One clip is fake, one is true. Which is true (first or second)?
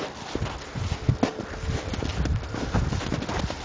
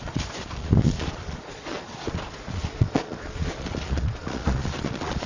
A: first